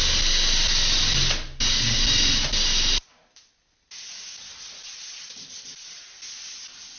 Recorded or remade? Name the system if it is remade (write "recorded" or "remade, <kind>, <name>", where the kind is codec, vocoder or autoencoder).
recorded